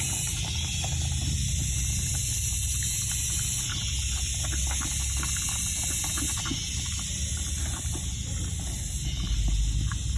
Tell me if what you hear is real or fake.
real